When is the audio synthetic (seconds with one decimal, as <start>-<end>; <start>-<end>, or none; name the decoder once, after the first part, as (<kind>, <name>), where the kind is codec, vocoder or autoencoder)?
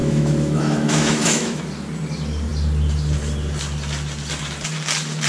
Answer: 0.0-1.6 (autoencoder, DAC-VAE)